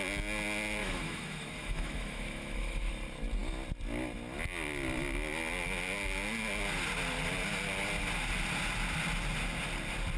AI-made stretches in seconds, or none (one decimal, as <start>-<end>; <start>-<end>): 0.8-2.9